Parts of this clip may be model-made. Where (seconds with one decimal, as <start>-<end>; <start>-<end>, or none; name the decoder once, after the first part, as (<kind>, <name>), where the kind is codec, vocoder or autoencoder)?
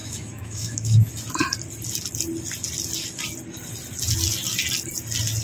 0.0-1.1 (autoencoder, DAC-VAE)